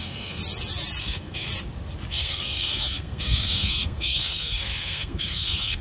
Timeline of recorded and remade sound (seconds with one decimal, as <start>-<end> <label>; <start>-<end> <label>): 0.0-0.4 remade; 0.4-1.0 recorded; 1.0-1.5 remade; 1.5-2.1 recorded; 2.1-5.8 remade